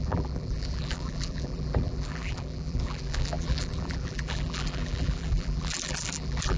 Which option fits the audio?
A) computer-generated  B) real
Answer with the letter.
A